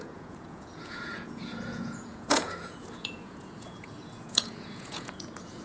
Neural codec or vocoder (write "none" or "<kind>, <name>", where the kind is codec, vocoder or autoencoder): vocoder, Vocos